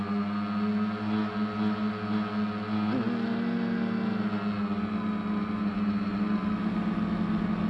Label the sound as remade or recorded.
recorded